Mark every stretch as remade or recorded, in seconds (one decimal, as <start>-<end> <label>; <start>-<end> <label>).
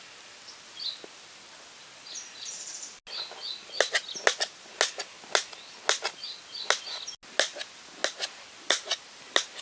0.0-9.6 recorded